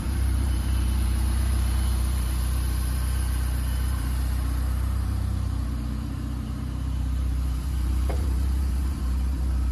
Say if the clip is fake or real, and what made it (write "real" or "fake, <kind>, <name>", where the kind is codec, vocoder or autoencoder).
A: fake, vocoder, BigVGAN v2